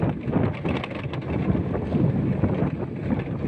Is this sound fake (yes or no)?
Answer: no